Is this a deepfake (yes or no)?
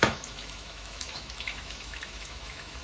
yes